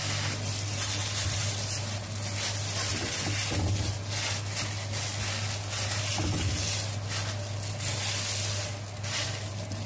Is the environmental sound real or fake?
real